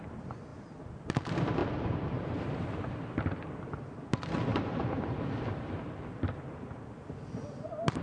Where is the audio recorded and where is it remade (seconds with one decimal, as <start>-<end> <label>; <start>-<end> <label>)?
0.0-4.5 recorded; 4.5-6.8 remade; 6.8-8.0 recorded